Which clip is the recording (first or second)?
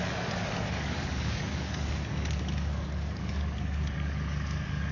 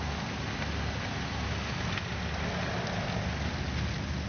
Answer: second